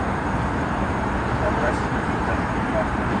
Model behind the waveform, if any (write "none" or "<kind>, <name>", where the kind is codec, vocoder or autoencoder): vocoder, BigVGAN v2